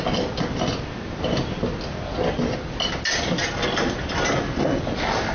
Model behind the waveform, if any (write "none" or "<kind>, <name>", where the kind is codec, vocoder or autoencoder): none